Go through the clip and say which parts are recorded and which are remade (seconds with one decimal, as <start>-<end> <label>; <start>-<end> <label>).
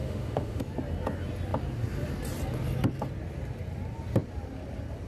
0.0-0.6 remade; 0.6-5.1 recorded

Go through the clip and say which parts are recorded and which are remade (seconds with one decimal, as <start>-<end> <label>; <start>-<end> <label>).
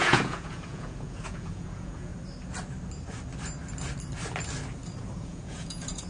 0.0-2.1 remade; 2.1-5.2 recorded; 5.2-6.1 remade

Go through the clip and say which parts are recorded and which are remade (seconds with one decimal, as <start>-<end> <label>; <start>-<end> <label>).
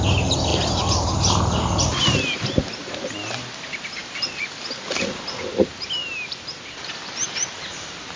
0.0-6.0 recorded; 6.0-8.2 remade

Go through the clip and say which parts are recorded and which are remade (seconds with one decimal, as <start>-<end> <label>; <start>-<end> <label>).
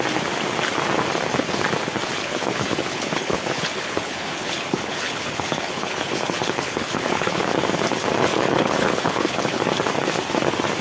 0.0-2.2 recorded; 2.2-7.4 remade; 7.4-8.3 recorded; 8.3-9.6 remade; 9.6-10.8 recorded